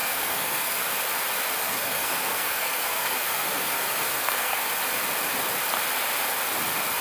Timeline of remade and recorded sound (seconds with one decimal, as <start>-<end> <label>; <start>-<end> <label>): 0.0-0.8 remade; 0.8-1.6 recorded; 1.6-4.7 remade; 4.7-7.0 recorded